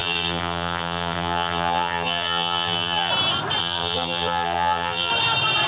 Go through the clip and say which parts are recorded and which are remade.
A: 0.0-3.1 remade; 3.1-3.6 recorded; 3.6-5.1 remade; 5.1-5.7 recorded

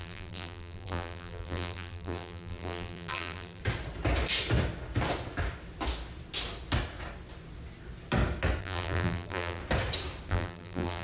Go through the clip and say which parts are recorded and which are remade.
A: 0.0-3.6 remade; 3.6-8.6 recorded; 8.6-9.6 remade; 9.6-10.3 recorded; 10.3-11.0 remade

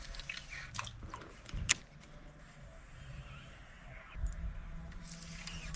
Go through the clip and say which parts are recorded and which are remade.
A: 0.0-5.8 recorded

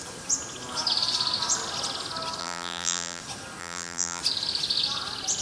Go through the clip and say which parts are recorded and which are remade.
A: 0.0-2.4 recorded; 2.4-3.2 remade; 3.2-3.6 recorded; 3.6-4.2 remade; 4.2-5.4 recorded

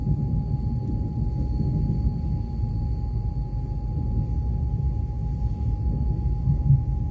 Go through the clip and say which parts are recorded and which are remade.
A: 0.0-7.1 recorded

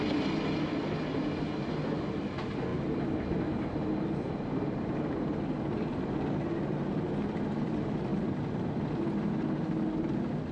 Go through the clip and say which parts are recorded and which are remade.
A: 0.0-8.1 recorded; 8.1-8.6 remade; 8.6-10.5 recorded

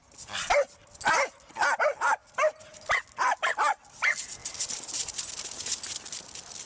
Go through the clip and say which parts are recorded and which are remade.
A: 0.0-4.4 recorded; 4.4-5.3 remade; 5.3-6.7 recorded

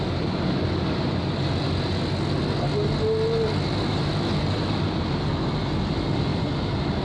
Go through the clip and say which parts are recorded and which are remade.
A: 0.0-3.9 recorded; 3.9-5.3 remade; 5.3-6.3 recorded; 6.3-7.0 remade